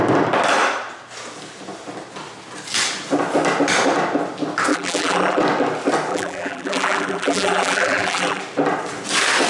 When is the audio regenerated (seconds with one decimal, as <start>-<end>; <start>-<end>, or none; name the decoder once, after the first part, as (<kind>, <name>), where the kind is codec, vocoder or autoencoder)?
4.7-5.4 (vocoder, BigVGAN v2); 6.1-8.4